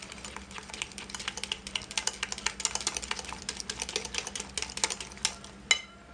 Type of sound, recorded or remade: recorded